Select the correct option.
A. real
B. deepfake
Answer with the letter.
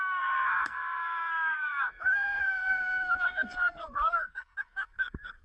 B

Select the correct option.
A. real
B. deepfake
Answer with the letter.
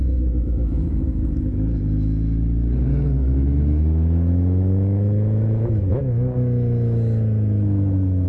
B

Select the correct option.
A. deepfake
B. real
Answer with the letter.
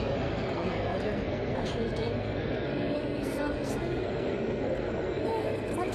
A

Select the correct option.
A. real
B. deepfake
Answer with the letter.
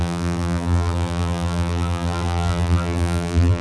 B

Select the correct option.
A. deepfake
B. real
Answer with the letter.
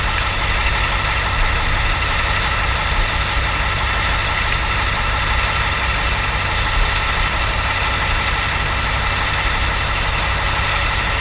B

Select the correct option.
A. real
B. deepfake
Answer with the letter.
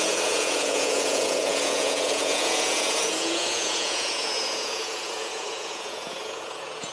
B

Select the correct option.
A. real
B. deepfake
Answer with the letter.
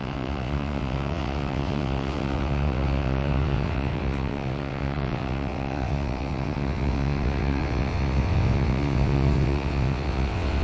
B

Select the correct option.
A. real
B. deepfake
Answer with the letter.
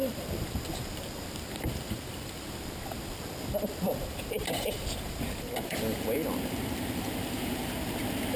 B